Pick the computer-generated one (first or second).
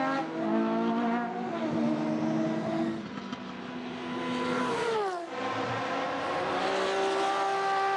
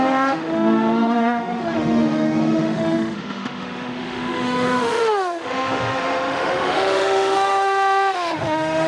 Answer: second